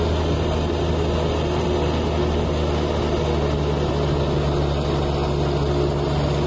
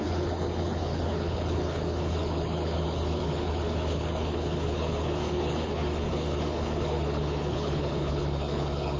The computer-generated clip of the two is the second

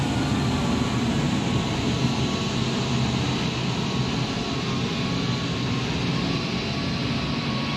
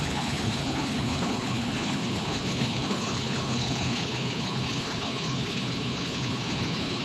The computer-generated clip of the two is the second